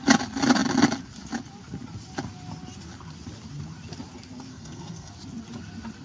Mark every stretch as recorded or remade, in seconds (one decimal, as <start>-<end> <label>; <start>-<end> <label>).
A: 0.0-4.5 recorded; 4.5-5.1 remade; 5.1-6.0 recorded